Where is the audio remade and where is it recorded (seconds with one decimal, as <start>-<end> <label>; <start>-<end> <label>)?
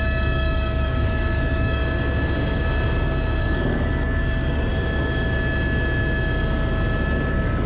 0.0-1.8 remade; 1.8-3.4 recorded; 3.4-4.7 remade; 4.7-7.3 recorded; 7.3-7.7 remade